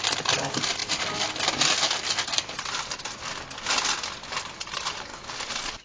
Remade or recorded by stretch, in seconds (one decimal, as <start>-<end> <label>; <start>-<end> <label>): 0.0-5.1 recorded; 5.1-5.8 remade